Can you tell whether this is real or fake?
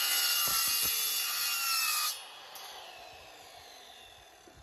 real